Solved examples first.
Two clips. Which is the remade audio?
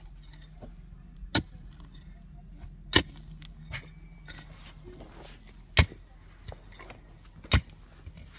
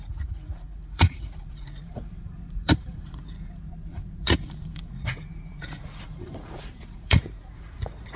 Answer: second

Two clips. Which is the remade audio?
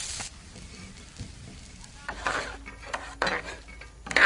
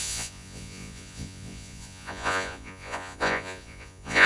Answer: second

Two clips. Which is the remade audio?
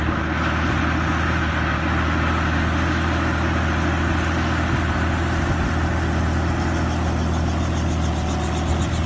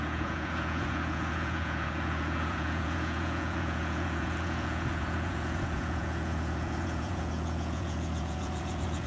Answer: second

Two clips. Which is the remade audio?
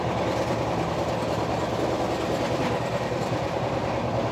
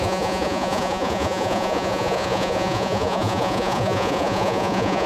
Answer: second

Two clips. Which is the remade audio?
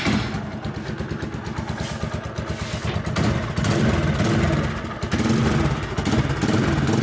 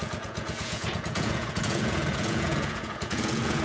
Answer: second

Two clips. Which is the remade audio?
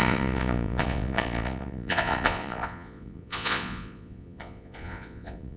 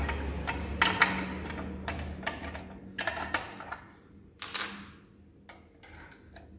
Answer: first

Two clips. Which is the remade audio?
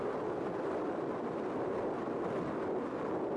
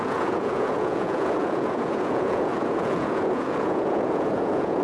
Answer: second